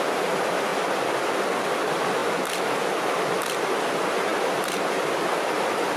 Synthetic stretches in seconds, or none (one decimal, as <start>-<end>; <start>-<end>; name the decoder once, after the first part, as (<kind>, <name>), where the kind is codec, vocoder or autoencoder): none